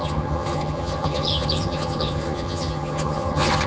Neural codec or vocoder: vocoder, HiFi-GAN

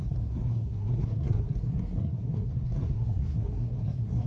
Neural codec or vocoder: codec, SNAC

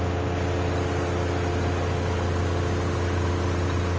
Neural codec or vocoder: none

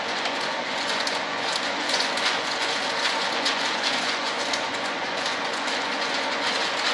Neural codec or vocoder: vocoder, Vocos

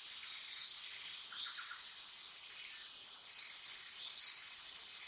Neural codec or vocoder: none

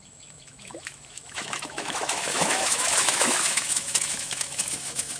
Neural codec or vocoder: autoencoder, DAC-VAE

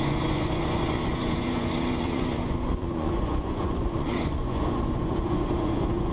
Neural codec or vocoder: vocoder, Vocos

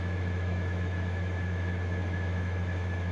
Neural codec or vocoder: autoencoder, DAC-VAE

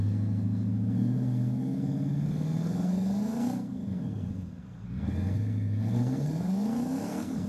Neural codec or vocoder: codec, SNAC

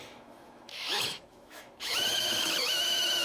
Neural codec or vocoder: autoencoder, DAC-VAE